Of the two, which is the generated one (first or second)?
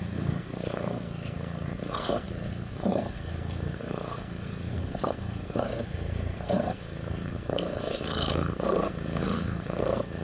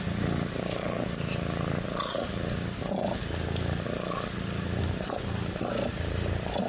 first